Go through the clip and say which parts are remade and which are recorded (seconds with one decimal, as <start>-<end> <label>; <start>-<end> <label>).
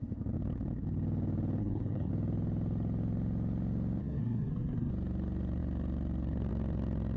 0.0-1.6 recorded; 1.6-2.1 remade; 2.1-4.0 recorded; 4.0-4.9 remade; 4.9-7.2 recorded